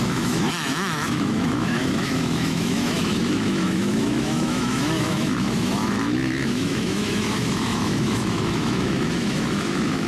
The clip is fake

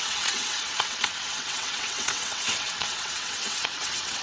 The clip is fake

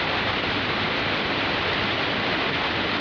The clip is fake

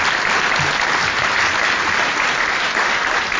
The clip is real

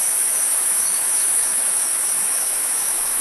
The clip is fake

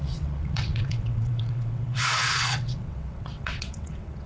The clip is fake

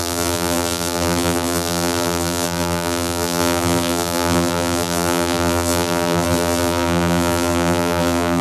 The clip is fake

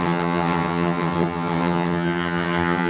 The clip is fake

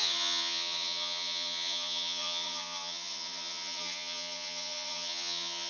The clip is fake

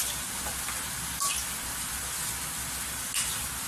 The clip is real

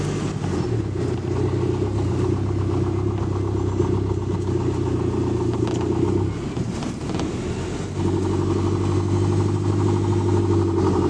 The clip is real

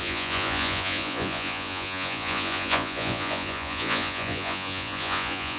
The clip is fake